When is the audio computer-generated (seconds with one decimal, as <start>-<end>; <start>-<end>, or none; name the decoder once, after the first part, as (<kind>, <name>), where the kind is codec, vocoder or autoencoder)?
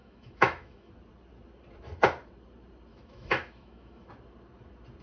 0.0-0.9 (autoencoder, DAC-VAE); 2.9-4.1